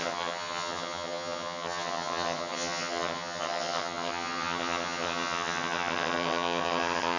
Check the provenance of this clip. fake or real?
fake